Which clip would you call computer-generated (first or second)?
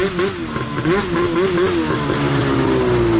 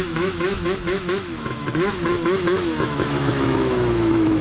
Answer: second